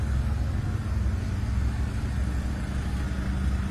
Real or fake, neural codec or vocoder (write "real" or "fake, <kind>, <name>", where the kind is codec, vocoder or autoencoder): real